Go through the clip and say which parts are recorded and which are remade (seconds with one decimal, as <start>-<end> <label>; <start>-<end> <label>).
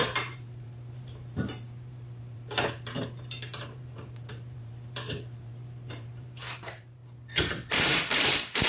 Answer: 0.0-7.0 remade; 7.0-7.7 recorded; 7.7-8.7 remade